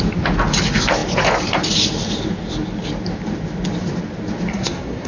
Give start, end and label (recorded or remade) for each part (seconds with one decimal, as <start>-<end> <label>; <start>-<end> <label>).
0.0-4.5 recorded; 4.5-5.1 remade